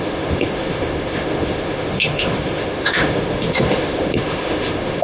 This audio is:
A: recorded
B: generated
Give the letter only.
B